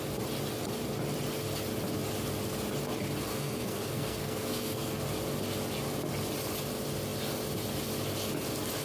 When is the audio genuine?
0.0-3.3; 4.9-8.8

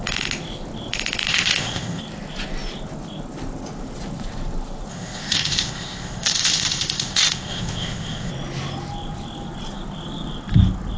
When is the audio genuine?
0.0-1.3; 2.0-4.9; 8.3-11.0

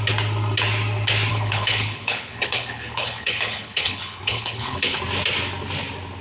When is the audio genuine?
0.0-1.3; 5.0-6.2

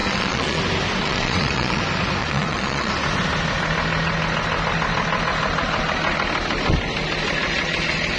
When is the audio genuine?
0.6-1.0; 1.8-2.2; 2.9-8.2

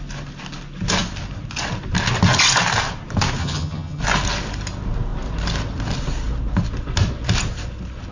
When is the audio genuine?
0.0-3.4; 4.0-8.1

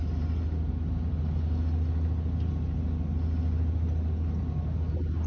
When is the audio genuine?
0.0-5.3